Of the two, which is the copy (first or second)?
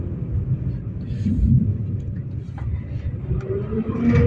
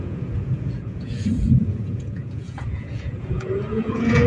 second